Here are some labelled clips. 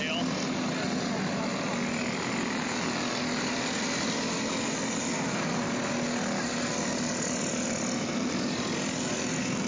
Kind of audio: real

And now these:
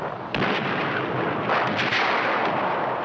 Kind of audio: real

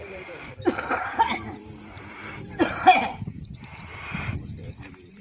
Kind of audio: fake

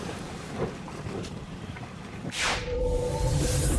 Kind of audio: fake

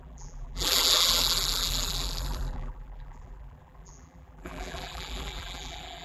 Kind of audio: fake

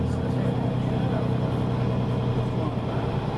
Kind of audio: real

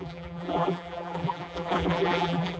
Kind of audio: fake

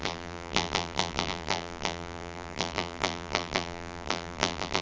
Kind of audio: fake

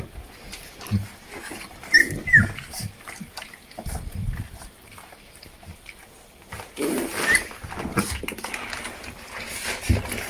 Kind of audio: real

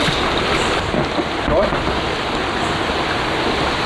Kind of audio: real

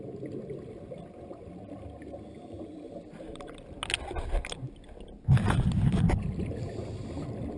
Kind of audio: real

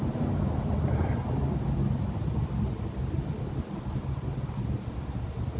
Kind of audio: real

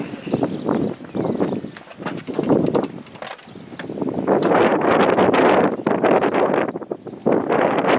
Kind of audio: real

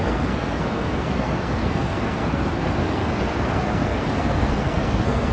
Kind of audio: fake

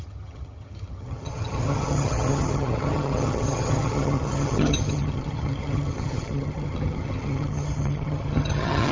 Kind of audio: fake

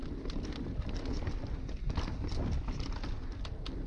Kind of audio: real